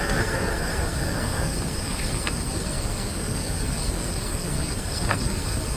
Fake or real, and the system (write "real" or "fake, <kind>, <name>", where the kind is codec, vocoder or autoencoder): fake, codec, SNAC